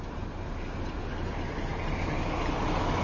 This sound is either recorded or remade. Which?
recorded